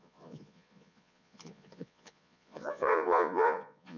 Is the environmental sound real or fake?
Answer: fake